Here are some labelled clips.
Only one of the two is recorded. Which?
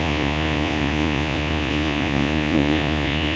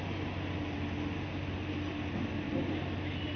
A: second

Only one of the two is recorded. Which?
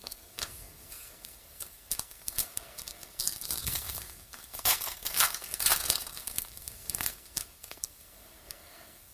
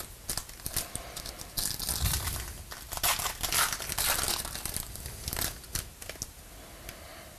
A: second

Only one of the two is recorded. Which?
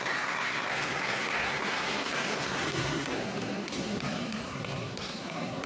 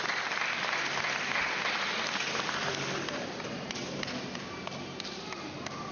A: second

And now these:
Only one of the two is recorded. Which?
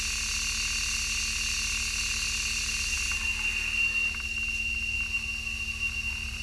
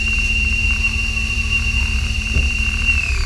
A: first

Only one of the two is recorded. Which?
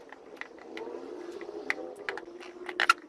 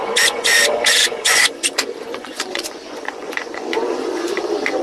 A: first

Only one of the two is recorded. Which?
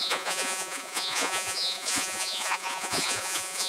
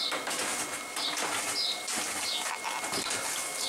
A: second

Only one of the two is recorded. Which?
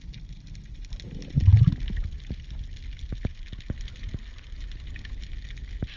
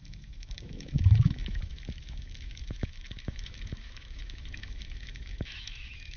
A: first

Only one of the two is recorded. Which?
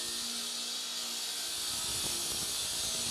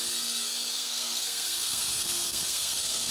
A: first